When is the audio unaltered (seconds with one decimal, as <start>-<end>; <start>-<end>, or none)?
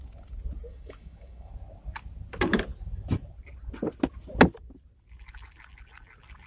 0.0-0.7; 1.5-6.5